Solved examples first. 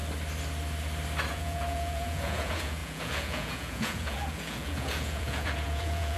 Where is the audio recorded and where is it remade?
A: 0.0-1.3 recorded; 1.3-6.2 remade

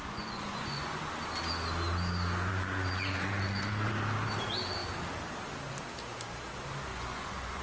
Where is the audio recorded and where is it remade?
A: 0.0-1.0 remade; 1.0-2.5 recorded; 2.5-3.9 remade; 3.9-6.9 recorded; 6.9-7.6 remade

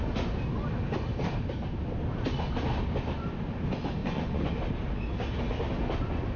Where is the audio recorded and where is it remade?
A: 0.0-4.0 recorded; 4.0-4.5 remade; 4.5-6.4 recorded

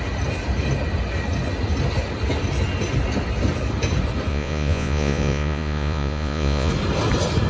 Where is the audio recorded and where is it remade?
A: 0.0-4.3 recorded; 4.3-6.7 remade; 6.7-7.5 recorded

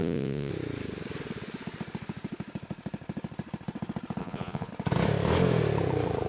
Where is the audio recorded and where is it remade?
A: 0.0-0.5 remade; 0.5-4.2 recorded; 4.2-4.7 remade; 4.7-6.3 recorded

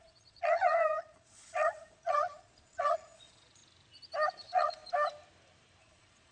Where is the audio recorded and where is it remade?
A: 0.0-3.6 remade; 3.6-4.3 recorded; 4.3-4.8 remade; 4.8-5.8 recorded; 5.8-6.3 remade

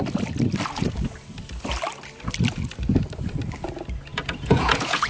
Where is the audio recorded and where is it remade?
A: 0.0-4.1 recorded; 4.1-5.1 remade